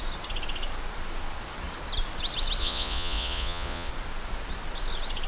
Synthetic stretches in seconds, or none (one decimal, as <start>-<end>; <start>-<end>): 2.6-3.9